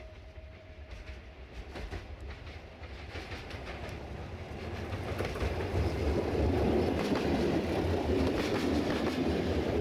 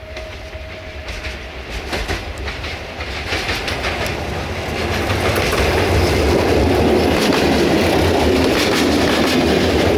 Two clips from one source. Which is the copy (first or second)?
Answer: first